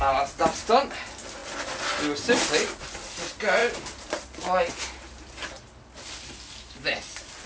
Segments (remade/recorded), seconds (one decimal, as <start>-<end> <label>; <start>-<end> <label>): 0.0-7.5 recorded